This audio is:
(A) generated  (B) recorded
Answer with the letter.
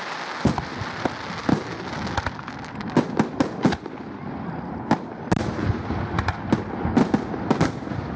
B